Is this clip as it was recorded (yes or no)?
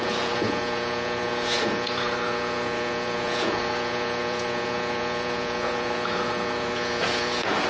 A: no